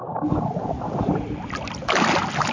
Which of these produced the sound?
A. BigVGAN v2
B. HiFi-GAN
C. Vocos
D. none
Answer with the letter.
D